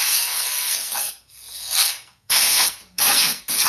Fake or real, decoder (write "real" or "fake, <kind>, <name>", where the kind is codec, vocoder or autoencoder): fake, codec, SNAC